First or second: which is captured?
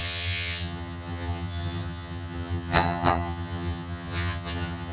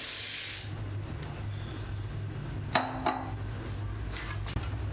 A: second